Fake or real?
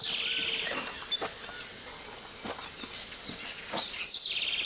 real